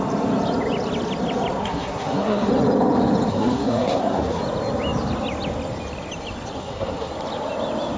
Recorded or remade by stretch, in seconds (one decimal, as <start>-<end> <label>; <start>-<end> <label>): 0.0-1.6 recorded; 1.6-2.5 remade; 2.5-3.3 recorded; 3.3-4.4 remade; 4.4-6.6 recorded; 6.6-7.1 remade; 7.1-8.0 recorded